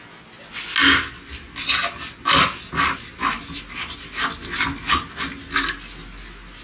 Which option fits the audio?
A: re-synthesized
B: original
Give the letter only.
B